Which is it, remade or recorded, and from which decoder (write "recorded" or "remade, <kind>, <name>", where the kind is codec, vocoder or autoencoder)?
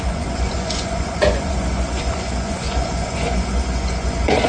remade, vocoder, Vocos